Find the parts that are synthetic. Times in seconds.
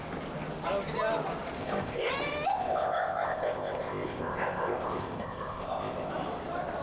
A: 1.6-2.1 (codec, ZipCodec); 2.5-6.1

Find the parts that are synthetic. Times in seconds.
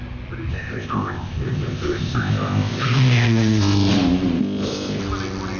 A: 0.5-3.9 (codec, ZipCodec); 4.4-5.0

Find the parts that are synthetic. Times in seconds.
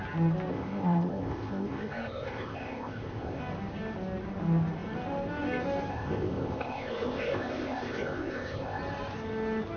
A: 0.5-3.4 (codec, ZipCodec); 5.9-8.8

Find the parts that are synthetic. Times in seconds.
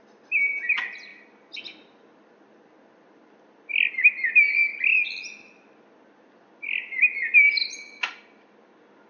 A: none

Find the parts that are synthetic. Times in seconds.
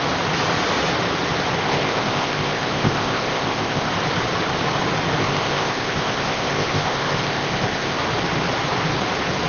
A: 1.6-3.9 (codec, ZipCodec); 5.2-8.0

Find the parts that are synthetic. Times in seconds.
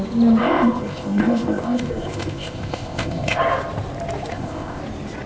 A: 0.4-3.4 (codec, ZipCodec); 4.3-4.8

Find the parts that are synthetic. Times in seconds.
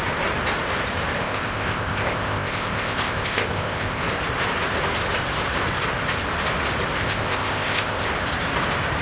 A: 1.2-4.0 (codec, ZipCodec); 7.0-8.1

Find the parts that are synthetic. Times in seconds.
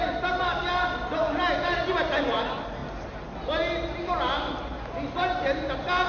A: none